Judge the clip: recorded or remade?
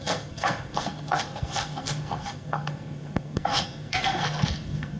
remade